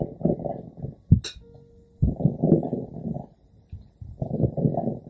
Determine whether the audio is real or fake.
real